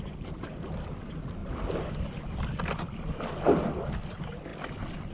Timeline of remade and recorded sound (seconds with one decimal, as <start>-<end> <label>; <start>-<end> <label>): 0.0-5.1 recorded